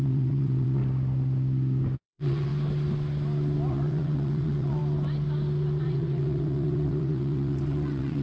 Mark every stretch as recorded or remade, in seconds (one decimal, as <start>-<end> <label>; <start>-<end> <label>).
0.0-0.8 remade; 0.8-2.0 recorded; 2.0-2.5 remade; 2.5-3.7 recorded; 3.7-4.8 remade; 4.8-5.8 recorded; 5.8-8.2 remade